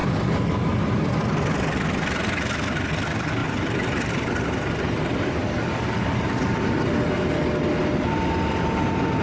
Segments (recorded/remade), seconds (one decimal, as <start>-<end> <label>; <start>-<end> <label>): 0.0-3.4 recorded; 3.4-6.9 remade; 6.9-9.2 recorded